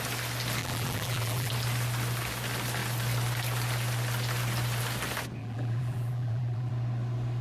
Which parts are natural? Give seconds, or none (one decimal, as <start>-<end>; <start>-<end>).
0.0-0.6; 1.5-5.4; 6.7-7.4